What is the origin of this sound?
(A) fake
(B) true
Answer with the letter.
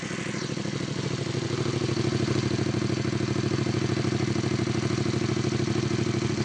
B